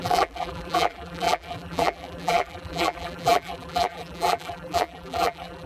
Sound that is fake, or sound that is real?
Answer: fake